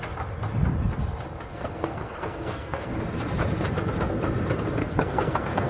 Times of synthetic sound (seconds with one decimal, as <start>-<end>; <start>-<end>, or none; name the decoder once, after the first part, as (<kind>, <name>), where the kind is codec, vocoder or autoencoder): 1.5-2.9 (codec, SNAC); 4.8-5.7